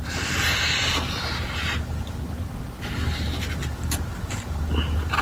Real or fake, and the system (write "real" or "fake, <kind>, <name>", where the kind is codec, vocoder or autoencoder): real